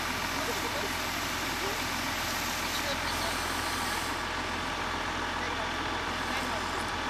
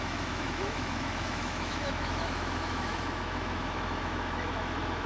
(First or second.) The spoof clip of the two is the second